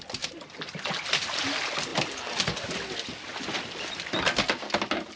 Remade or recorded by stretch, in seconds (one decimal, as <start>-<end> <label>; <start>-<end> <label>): 0.0-5.2 recorded